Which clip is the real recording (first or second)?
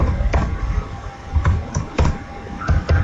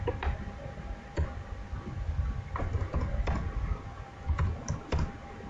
second